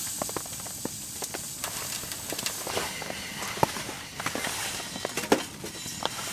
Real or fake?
real